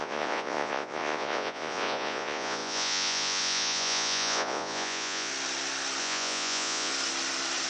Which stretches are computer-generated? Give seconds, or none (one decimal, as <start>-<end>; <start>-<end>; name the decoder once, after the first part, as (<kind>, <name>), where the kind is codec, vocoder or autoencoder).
0.0-5.3 (vocoder, Vocos); 6.0-6.9